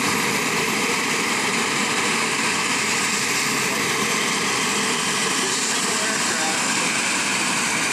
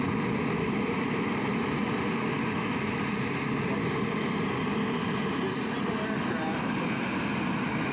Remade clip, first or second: first